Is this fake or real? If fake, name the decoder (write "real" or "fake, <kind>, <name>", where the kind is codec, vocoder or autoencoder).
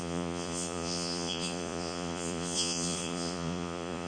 fake, vocoder, Vocos